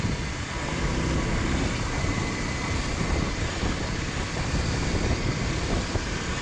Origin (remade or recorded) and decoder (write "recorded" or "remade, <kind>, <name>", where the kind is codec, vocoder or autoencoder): recorded